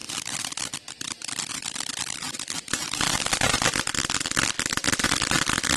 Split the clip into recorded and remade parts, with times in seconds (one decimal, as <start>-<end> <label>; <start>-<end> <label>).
0.0-0.6 remade; 0.6-1.5 recorded; 1.5-3.2 remade; 3.2-3.9 recorded; 3.9-5.8 remade